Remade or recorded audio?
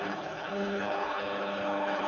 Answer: remade